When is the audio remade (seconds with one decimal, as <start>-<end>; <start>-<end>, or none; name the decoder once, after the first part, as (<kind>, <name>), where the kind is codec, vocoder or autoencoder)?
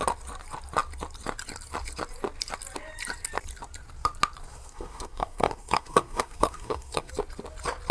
4.5-7.1 (codec, SNAC)